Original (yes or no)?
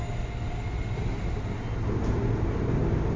yes